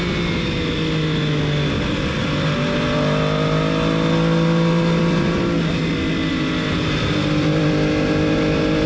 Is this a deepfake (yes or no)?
no